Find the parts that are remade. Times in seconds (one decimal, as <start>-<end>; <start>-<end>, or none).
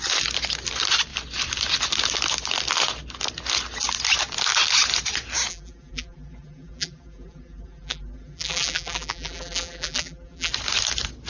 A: 5.5-10.5